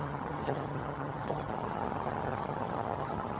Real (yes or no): no